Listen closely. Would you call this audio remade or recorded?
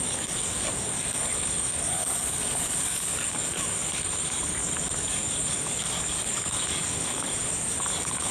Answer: remade